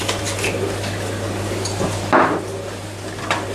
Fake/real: real